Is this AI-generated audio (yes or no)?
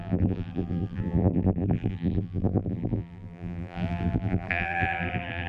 yes